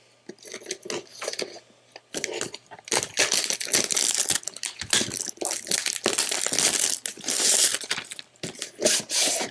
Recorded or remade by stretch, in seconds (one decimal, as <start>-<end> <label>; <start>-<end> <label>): 0.0-9.5 recorded